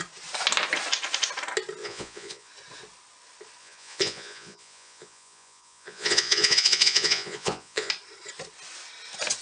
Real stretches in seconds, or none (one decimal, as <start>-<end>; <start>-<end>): 0.0-1.8; 2.5-3.6; 7.9-9.4